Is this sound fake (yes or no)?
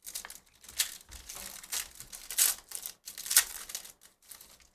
no